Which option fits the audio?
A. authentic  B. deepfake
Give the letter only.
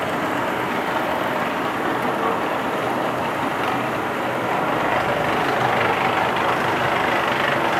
A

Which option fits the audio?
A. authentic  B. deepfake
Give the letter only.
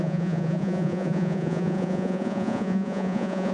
B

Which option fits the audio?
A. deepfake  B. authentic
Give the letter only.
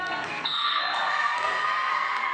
A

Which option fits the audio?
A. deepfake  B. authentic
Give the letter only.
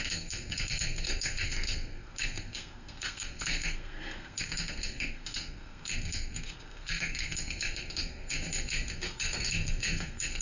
A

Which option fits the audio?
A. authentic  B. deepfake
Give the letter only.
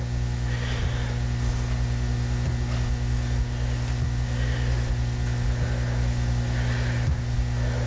A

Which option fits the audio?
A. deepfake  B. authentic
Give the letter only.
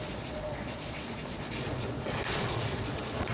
A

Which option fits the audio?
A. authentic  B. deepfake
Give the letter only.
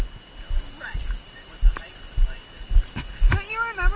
A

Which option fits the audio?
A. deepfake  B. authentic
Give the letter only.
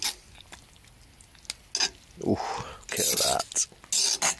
B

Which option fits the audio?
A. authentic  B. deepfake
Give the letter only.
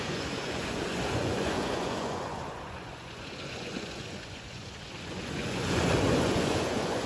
B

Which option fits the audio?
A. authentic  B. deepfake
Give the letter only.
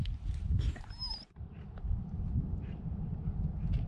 A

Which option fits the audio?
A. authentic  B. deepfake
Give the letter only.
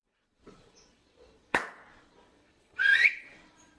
B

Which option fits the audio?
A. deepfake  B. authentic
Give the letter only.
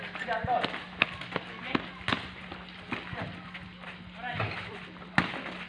B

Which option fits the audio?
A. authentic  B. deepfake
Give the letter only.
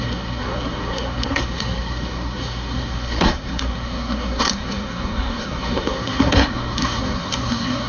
B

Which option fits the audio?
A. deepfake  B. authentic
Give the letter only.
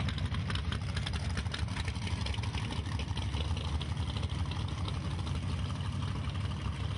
B